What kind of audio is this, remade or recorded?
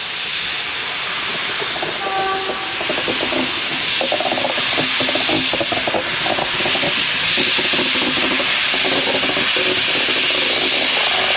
recorded